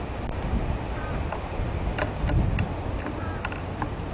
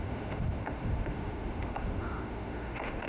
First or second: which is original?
first